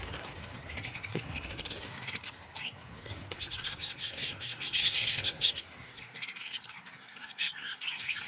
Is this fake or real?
fake